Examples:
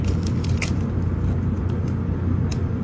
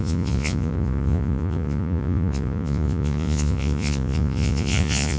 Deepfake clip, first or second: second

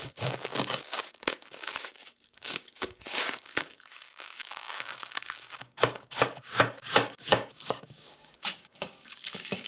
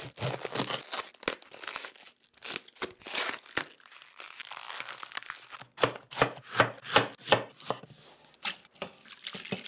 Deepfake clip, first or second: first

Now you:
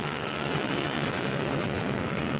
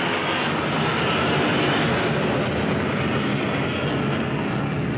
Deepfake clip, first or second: first